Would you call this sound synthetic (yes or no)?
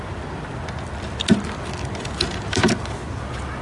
no